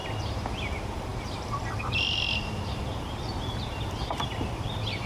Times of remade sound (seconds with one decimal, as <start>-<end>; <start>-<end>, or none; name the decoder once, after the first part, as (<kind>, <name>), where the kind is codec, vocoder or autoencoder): 0.5-5.1 (vocoder, BigVGAN v2)